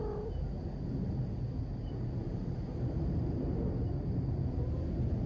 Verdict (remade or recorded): recorded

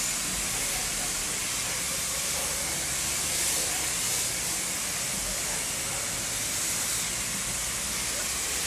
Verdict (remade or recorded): recorded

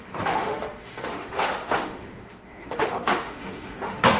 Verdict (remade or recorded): remade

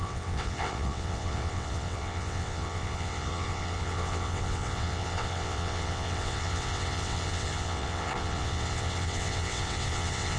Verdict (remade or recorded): remade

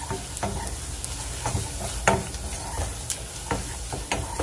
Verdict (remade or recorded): recorded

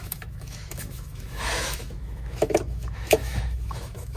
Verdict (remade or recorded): remade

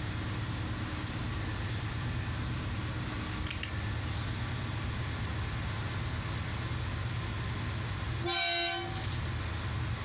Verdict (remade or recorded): recorded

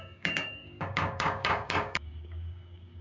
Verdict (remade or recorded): remade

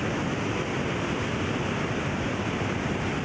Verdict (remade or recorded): recorded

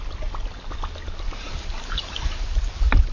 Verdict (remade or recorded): recorded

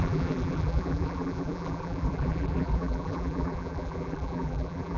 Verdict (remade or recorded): remade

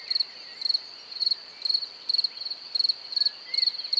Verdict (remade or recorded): recorded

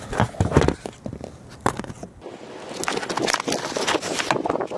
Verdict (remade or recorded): recorded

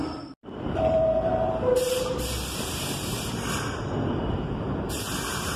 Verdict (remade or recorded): remade